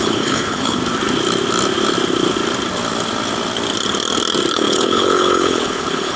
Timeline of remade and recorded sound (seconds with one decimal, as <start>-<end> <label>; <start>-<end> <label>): 0.0-0.8 remade; 0.8-4.5 recorded; 4.5-6.2 remade